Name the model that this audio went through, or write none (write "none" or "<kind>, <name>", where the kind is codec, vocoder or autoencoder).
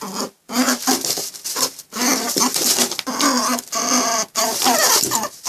none